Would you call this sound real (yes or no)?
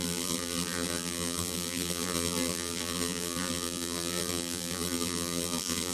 no